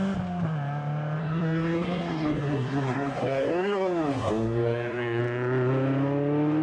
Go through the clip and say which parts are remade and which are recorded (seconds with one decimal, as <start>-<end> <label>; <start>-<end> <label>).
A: 0.0-1.2 recorded; 1.2-5.2 remade; 5.2-6.6 recorded